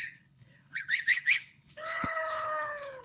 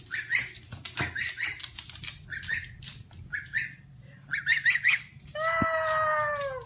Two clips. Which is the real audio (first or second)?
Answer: second